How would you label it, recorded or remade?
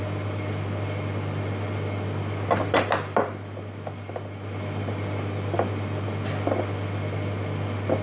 recorded